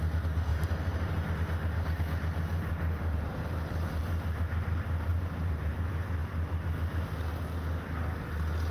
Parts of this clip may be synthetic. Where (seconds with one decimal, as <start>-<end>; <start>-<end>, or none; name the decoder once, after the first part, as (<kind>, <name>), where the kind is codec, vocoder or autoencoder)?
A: 0.5-1.1 (vocoder, BigVGAN v2); 2.5-4.0; 5.1-5.7